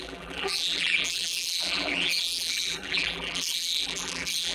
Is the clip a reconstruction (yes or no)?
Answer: yes